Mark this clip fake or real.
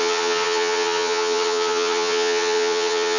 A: fake